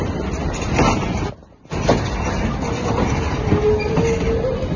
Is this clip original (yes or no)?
yes